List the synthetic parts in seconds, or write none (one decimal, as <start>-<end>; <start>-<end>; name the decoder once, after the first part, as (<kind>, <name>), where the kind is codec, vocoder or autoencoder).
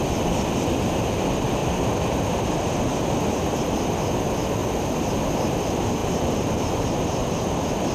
4.6-5.1 (vocoder, BigVGAN v2)